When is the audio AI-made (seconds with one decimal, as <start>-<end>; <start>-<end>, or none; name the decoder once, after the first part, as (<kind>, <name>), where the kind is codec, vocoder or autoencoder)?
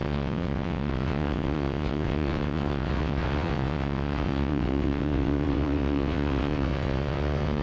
0.0-7.6 (vocoder, WaveNeXt)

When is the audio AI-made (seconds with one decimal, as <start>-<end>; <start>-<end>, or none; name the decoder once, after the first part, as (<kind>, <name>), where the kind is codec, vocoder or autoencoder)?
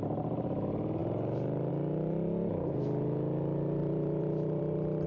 3.8-4.6 (vocoder, BigVGAN v2)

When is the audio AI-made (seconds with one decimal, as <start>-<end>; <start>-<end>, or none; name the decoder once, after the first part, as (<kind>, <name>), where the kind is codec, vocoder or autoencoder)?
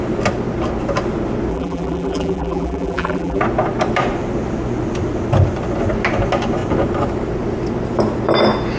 1.5-3.4 (vocoder, BigVGAN v2)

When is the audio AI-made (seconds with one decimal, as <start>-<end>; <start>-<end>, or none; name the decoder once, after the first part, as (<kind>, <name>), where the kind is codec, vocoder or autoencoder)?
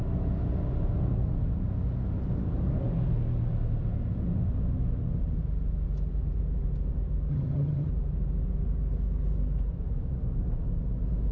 7.3-7.9 (vocoder, HiFi-GAN)